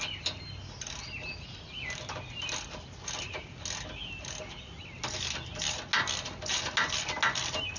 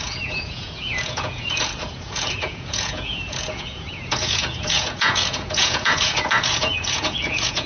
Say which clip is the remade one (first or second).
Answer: second